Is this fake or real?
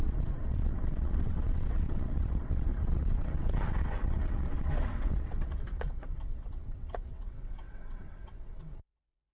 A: fake